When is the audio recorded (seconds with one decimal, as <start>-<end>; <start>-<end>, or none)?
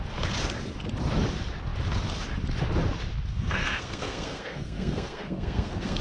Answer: 0.0-3.3